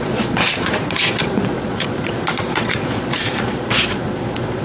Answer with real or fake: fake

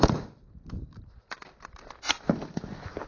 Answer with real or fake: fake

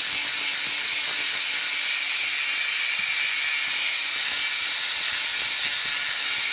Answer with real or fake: real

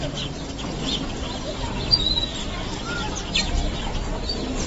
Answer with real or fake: real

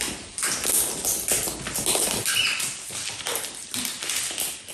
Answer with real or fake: real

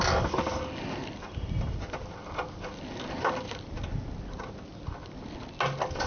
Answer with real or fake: real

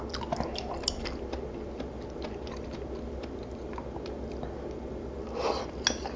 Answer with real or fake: real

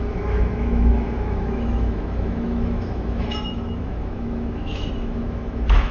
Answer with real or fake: fake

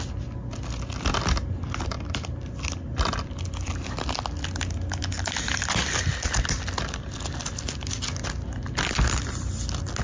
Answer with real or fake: real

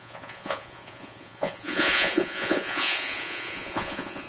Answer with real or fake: fake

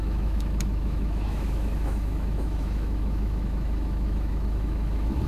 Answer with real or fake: fake